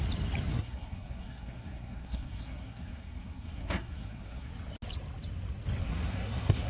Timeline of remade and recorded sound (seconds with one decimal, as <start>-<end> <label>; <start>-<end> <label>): 0.0-0.5 recorded; 0.5-4.5 remade; 4.5-5.8 recorded; 5.8-6.7 remade